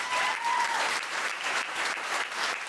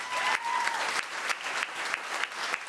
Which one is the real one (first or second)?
second